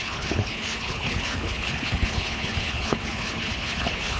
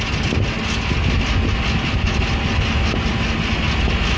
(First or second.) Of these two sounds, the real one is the second